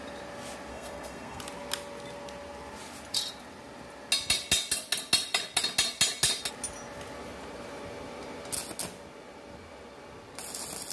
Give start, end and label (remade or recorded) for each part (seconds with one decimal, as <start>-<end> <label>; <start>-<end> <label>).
0.0-0.7 recorded; 0.7-1.4 remade; 1.4-10.9 recorded